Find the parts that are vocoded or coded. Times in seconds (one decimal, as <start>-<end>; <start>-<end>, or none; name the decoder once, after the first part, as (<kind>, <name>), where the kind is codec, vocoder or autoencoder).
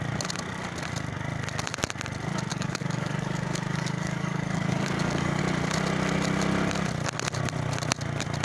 2.5-5.4 (codec, DAC)